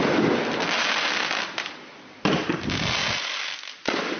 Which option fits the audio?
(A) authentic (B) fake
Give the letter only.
A